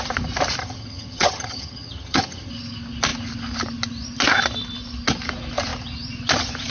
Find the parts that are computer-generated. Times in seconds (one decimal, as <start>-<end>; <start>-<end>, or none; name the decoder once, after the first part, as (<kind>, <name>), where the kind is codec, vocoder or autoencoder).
0.6-2.5 (vocoder, HiFi-GAN)